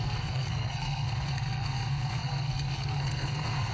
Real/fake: fake